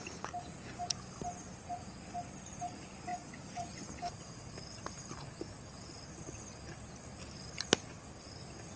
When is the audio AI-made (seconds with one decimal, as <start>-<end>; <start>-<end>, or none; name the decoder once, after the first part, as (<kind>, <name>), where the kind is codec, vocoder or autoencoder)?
3.1-5.1 (vocoder, BigVGAN v2)